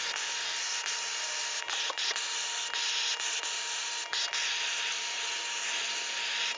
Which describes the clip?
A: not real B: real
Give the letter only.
B